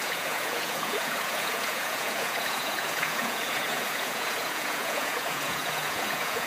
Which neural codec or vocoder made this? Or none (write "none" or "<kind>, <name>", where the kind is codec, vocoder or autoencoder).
vocoder, Vocos